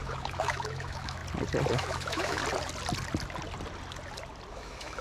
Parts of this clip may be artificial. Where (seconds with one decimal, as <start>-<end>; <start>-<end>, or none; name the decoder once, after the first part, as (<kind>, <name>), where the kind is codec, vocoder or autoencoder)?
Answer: 0.0-1.2 (autoencoder, DAC-VAE); 1.7-2.4; 4.5-5.0

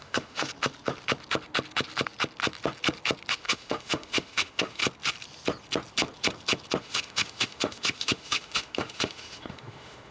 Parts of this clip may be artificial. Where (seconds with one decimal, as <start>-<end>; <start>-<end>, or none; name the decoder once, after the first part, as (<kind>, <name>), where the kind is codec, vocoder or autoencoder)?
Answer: 0.0-0.5 (autoencoder, DAC-VAE); 3.4-4.8; 6.8-10.1

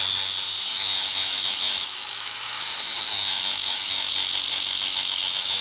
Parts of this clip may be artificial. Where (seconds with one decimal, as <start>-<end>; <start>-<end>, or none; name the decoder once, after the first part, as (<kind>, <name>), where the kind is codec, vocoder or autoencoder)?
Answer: 0.7-4.1 (autoencoder, DAC-VAE); 4.5-5.6